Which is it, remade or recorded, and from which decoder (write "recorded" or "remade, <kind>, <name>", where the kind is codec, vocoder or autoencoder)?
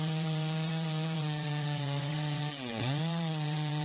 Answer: remade, vocoder, WaveNeXt